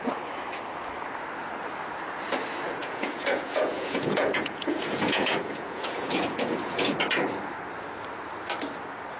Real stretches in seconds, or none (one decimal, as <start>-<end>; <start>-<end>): 0.0-2.8; 7.0-9.2

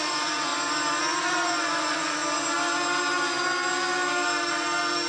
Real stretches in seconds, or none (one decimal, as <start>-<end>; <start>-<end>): 0.5-1.2; 2.2-5.1

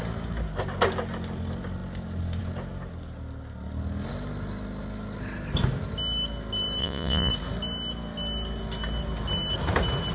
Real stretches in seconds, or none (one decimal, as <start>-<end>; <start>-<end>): 0.0-6.8; 7.3-10.1

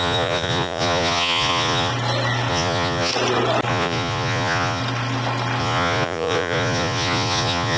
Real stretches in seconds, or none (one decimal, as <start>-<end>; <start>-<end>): 1.9-2.5; 3.1-3.7; 4.8-5.6

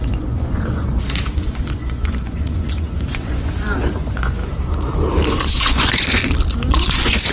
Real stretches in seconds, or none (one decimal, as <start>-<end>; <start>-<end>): 4.4-5.3; 6.2-6.7

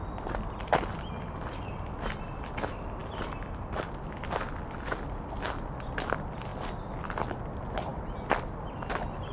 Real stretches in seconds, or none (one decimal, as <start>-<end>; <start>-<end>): 0.0-9.3

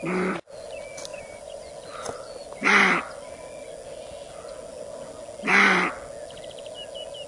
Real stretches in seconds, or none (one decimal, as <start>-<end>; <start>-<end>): 0.0-1.1; 1.7-7.3